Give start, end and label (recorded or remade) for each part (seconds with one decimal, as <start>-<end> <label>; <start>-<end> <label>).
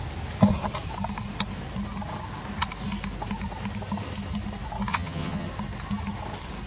0.0-4.9 recorded; 4.9-5.5 remade; 5.5-6.7 recorded